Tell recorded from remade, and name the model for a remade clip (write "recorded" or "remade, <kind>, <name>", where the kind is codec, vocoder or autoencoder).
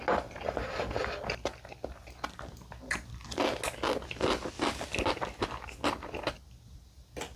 recorded